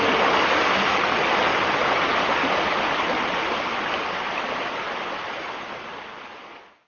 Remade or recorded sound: recorded